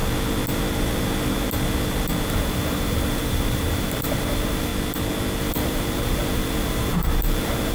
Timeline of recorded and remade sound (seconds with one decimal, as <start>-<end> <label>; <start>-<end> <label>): 0.0-2.3 recorded; 2.3-4.7 remade; 4.7-5.4 recorded; 5.4-7.7 remade